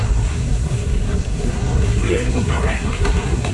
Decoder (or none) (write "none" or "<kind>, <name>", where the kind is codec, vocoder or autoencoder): codec, SNAC